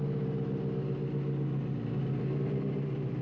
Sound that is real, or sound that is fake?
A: real